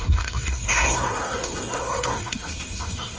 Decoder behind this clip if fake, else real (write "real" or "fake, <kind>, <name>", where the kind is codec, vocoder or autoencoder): fake, codec, SNAC